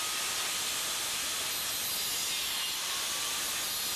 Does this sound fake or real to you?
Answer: real